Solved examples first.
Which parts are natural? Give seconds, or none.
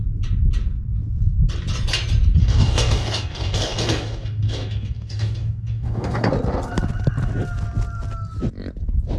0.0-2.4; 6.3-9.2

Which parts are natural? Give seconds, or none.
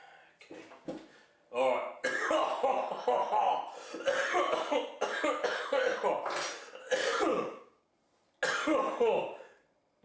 0.0-7.3; 7.9-10.0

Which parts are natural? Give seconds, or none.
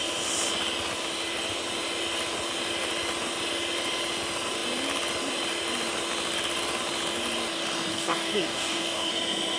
0.0-7.9; 9.1-9.6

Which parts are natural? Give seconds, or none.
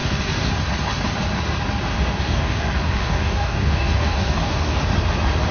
0.5-1.9; 4.8-5.5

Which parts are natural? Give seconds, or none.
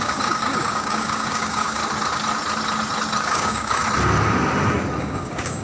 1.8-3.2; 3.8-5.0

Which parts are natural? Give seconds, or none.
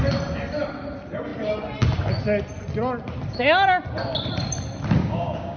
0.0-5.0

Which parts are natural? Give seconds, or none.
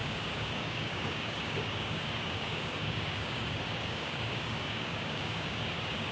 none